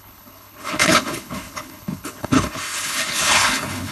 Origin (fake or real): fake